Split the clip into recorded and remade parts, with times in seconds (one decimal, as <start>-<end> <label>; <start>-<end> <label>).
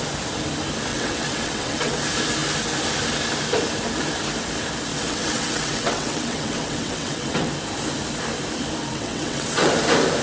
0.0-0.9 recorded; 0.9-2.0 remade; 2.0-4.9 recorded; 4.9-7.5 remade; 7.5-8.8 recorded; 8.8-9.7 remade; 9.7-10.2 recorded